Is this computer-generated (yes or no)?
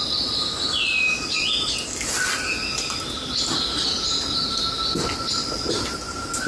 no